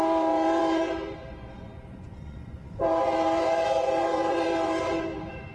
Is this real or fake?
fake